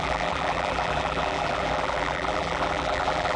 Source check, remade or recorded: remade